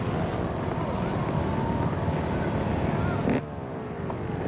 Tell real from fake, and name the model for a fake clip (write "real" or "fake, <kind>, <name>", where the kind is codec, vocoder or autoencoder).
real